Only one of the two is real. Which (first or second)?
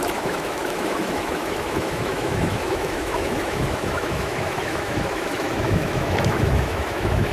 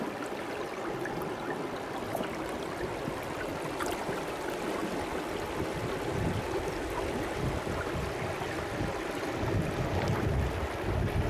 second